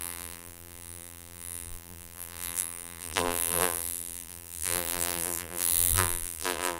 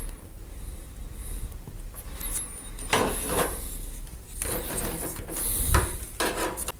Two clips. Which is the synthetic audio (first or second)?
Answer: first